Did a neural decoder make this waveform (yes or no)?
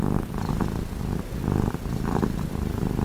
yes